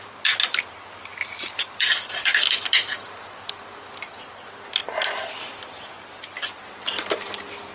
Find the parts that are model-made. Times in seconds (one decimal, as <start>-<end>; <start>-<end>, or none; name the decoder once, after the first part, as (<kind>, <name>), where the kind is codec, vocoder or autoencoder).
1.1-4.2 (vocoder, BigVGAN v2)